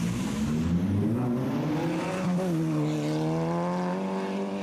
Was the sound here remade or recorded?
recorded